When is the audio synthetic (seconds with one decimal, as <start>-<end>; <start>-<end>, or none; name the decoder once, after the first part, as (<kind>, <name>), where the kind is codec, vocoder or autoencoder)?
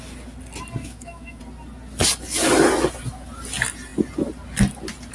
0.8-1.4 (autoencoder, DAC-VAE)